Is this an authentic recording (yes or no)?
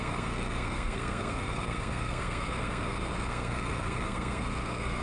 no